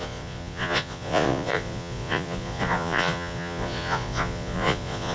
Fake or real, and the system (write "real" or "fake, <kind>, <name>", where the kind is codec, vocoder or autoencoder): fake, vocoder, Vocos